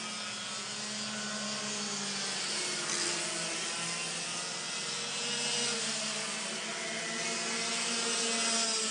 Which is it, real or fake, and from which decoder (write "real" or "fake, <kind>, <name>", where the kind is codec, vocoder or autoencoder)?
real